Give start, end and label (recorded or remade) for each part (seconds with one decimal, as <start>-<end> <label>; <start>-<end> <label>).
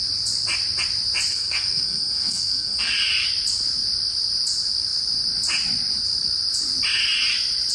0.0-1.3 recorded; 1.3-2.9 remade; 2.9-7.7 recorded